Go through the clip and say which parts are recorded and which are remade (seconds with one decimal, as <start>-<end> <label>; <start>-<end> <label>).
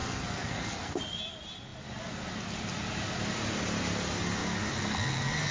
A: 0.0-1.0 remade; 1.0-5.5 recorded